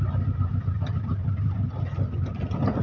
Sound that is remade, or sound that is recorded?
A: recorded